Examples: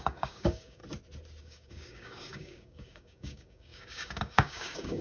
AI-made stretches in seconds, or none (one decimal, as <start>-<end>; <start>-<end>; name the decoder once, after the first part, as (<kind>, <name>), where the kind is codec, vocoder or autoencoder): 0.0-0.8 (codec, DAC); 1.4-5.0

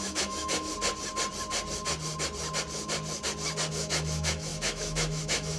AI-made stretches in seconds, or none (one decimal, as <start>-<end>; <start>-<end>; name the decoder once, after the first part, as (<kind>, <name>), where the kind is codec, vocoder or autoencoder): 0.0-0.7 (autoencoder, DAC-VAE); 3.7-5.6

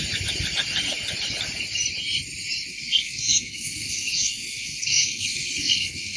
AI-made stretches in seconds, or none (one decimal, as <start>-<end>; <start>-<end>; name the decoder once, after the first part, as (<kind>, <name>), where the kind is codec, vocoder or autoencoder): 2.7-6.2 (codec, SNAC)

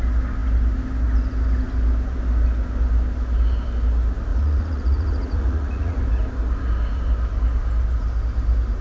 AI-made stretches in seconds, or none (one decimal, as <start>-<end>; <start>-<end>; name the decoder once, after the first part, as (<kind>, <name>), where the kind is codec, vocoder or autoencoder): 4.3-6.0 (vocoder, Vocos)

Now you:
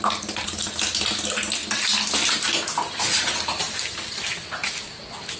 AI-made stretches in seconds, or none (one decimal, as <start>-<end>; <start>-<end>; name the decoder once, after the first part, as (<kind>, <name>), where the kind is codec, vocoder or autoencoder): none

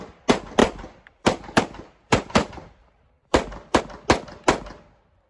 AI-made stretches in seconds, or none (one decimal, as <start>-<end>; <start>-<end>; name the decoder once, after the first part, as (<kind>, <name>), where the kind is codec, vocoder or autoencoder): 0.6-3.8 (vocoder, BigVGAN v2)

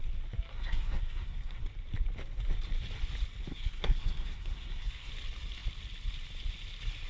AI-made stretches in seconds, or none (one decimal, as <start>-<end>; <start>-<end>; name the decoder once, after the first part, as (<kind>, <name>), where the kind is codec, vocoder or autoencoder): 0.5-1.6 (codec, SNAC); 3.5-5.1

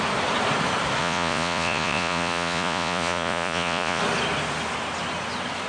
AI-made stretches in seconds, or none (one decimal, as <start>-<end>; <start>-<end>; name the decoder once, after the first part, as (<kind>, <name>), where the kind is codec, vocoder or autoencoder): 1.0-4.0 (vocoder, Vocos)